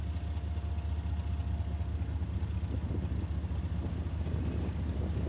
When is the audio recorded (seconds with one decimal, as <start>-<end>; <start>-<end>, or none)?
0.0-5.3